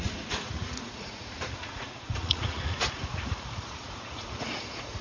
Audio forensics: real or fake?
fake